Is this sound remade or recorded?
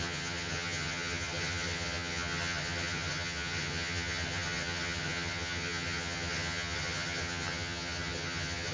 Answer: remade